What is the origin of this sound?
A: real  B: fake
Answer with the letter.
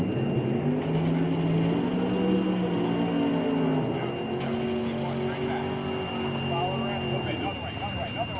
A